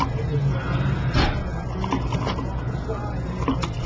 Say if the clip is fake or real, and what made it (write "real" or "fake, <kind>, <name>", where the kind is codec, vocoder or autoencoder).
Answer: real